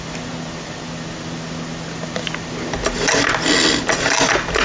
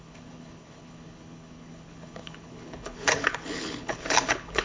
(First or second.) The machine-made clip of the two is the second